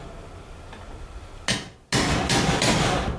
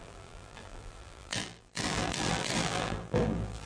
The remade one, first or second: second